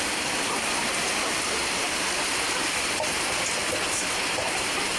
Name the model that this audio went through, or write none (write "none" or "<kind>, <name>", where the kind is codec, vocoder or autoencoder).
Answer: none